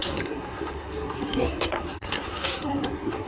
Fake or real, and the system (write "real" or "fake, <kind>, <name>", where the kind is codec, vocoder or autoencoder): fake, codec, SNAC